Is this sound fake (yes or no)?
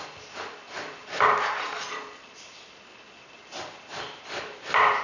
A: no